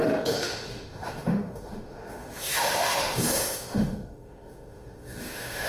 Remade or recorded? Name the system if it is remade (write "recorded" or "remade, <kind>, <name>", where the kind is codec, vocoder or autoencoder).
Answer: remade, autoencoder, DAC-VAE